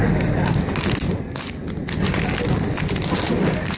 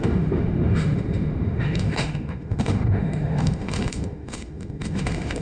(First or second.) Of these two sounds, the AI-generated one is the second